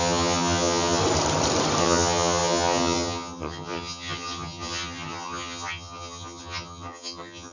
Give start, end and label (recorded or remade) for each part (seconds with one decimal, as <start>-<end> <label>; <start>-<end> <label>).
0.0-1.0 remade; 1.0-1.8 recorded; 1.8-7.5 remade